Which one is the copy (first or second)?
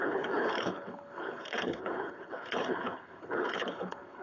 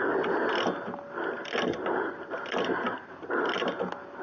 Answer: first